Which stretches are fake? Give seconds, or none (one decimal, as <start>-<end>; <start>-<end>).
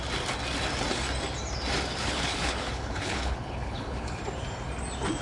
2.0-4.2